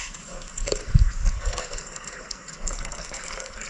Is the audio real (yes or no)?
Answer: no